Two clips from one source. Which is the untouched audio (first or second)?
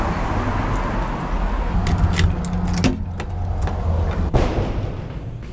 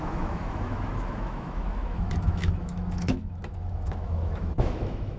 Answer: first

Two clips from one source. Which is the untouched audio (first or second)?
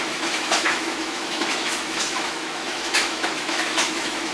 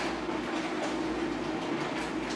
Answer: second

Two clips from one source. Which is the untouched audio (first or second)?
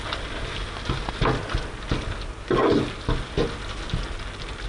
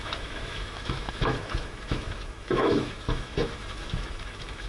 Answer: first